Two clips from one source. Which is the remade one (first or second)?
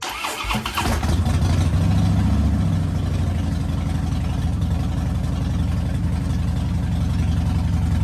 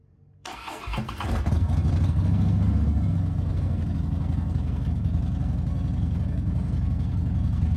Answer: second